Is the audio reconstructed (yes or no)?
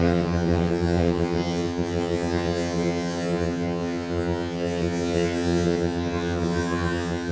yes